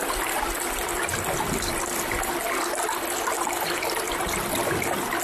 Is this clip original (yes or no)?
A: yes